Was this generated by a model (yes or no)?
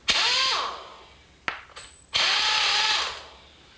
no